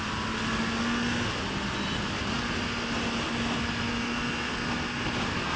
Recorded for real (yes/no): yes